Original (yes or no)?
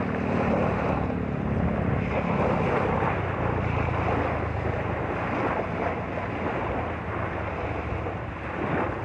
yes